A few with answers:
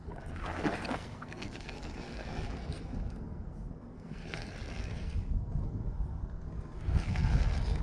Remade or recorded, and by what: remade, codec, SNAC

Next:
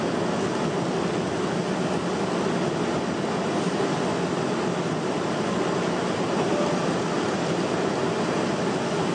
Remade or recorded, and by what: recorded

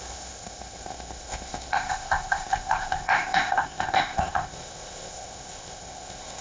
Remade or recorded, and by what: remade, codec, ZipCodec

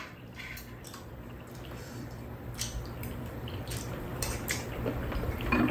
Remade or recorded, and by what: remade, vocoder, BigVGAN v2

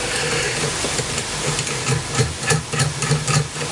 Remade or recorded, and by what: recorded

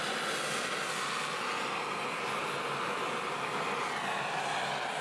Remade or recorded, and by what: recorded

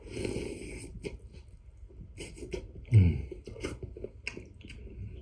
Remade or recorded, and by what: recorded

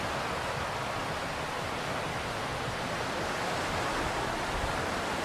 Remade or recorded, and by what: recorded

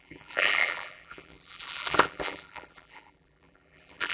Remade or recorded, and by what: remade, vocoder, BigVGAN v2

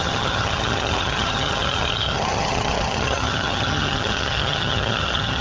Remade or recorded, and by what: remade, vocoder, HiFi-GAN